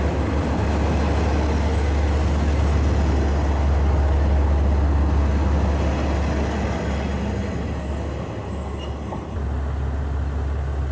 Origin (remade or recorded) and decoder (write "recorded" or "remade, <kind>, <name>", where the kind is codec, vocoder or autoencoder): recorded